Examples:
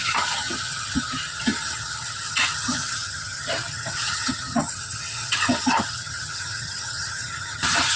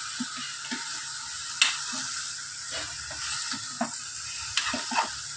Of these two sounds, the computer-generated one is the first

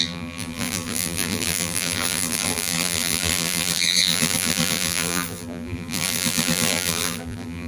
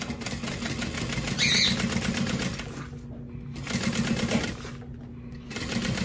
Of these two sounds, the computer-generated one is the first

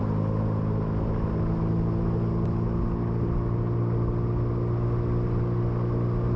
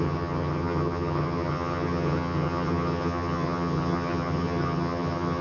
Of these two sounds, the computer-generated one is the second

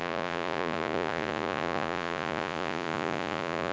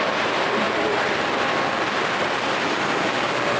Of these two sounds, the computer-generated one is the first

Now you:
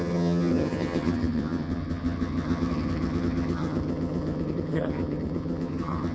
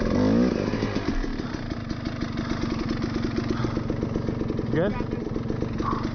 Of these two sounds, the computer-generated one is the first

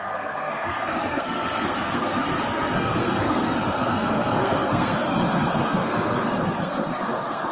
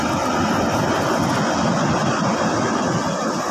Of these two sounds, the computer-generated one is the first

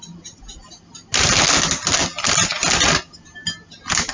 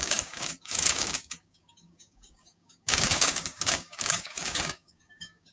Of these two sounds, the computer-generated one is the second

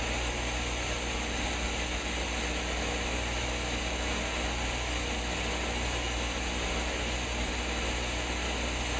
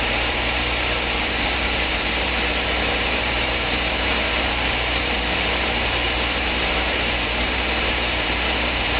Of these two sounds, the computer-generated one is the second